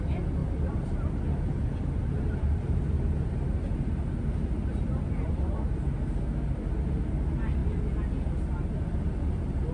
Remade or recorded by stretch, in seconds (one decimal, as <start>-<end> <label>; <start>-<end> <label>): 0.0-0.4 recorded; 0.4-5.4 remade; 5.4-9.7 recorded